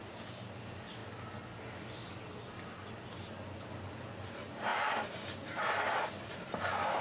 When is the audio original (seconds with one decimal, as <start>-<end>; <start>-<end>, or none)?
1.0-2.9